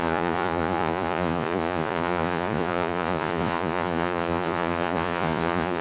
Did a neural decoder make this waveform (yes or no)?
yes